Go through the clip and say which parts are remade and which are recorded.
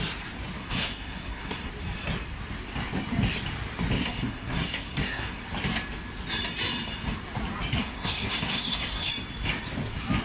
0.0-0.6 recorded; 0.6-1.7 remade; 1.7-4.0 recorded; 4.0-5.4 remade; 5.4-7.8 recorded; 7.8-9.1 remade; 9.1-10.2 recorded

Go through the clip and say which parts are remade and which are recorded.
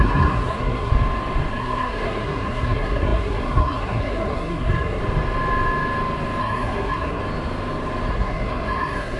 0.0-0.9 remade; 0.9-1.5 recorded; 1.5-5.0 remade; 5.0-6.4 recorded; 6.4-7.2 remade; 7.2-8.1 recorded; 8.1-9.2 remade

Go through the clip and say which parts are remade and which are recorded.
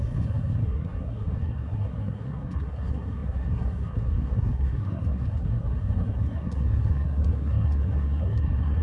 0.0-8.8 remade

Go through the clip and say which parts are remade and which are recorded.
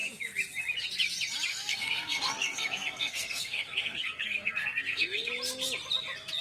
0.0-1.5 recorded; 1.5-5.3 remade; 5.3-6.4 recorded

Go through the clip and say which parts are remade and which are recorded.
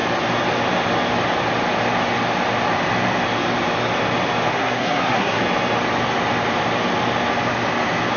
0.0-4.5 recorded; 4.5-5.4 remade; 5.4-8.2 recorded